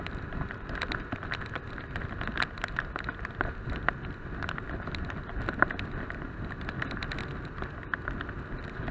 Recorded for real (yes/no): yes